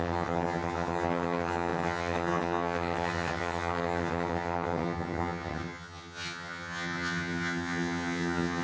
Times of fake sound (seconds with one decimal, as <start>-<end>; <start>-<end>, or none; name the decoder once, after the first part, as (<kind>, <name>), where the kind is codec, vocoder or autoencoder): 0.0-8.6 (vocoder, HiFi-GAN)